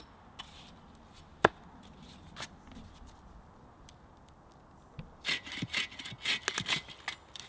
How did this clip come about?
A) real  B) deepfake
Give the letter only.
A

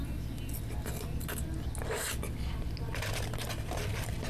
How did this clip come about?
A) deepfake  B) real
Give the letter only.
B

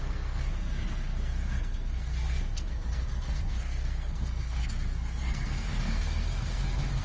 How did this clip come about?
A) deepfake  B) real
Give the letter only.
A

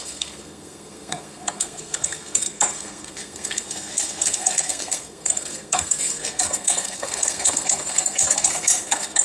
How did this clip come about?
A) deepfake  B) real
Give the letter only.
A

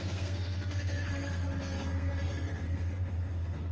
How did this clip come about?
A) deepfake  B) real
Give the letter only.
A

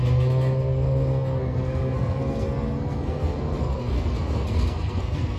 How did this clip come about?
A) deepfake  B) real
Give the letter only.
A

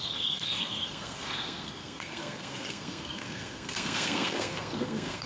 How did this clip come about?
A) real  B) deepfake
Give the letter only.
B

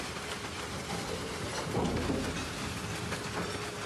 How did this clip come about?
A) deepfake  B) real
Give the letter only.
B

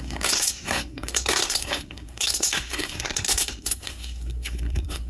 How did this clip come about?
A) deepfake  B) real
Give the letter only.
A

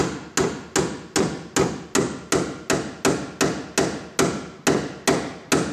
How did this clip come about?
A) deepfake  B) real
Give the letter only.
B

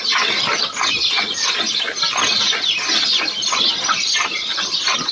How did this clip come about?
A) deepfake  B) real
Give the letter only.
B